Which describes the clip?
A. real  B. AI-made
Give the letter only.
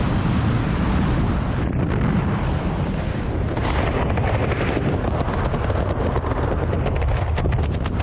A